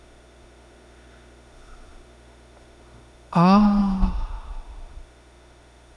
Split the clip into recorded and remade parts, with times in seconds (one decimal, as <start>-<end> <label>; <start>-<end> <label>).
0.0-6.0 remade